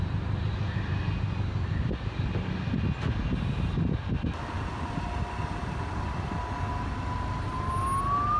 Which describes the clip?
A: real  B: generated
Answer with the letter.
A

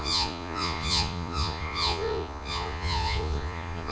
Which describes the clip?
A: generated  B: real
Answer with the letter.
A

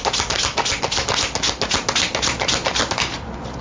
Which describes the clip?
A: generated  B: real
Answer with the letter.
B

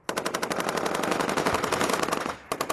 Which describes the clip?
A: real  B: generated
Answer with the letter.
A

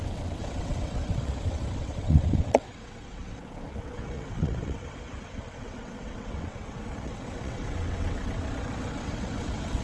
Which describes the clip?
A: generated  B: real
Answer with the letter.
A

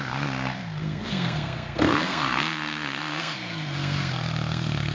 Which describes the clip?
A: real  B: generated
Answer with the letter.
B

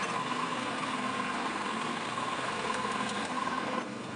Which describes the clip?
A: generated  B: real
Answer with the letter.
A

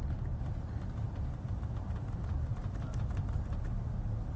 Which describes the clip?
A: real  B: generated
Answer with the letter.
A